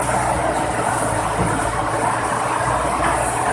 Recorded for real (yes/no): yes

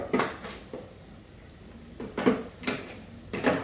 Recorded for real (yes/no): yes